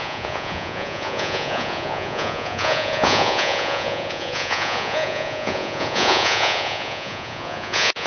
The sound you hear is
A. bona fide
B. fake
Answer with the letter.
B